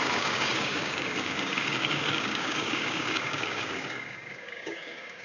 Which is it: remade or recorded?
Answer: remade